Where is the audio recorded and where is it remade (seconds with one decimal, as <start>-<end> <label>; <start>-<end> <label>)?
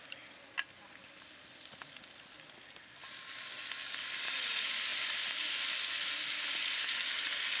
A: 0.0-7.6 recorded